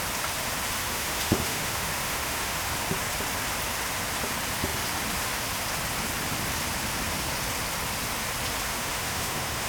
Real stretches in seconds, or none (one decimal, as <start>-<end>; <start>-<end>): 0.0-0.8; 2.7-8.7